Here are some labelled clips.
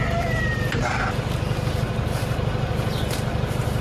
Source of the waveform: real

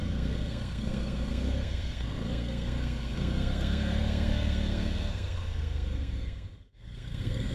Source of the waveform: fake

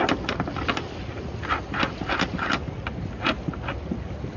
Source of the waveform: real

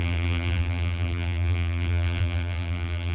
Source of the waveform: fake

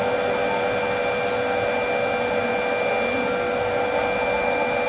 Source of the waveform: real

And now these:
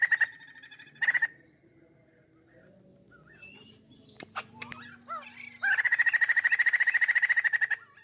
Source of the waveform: real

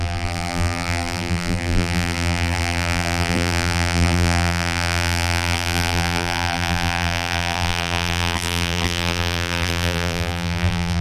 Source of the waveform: fake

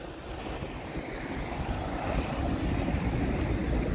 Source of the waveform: real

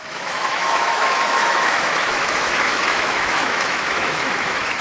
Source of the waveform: fake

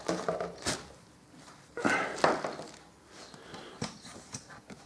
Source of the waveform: real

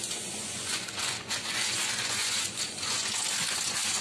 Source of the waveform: fake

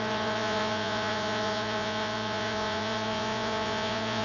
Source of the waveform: fake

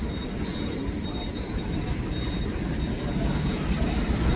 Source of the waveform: real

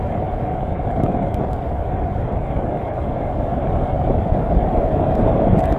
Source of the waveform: fake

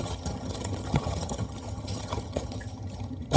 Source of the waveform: fake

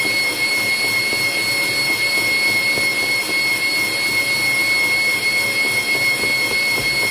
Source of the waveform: real